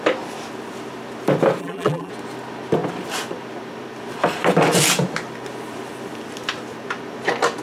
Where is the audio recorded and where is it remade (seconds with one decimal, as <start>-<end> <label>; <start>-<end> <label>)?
0.0-1.6 recorded; 1.6-2.1 remade; 2.1-7.6 recorded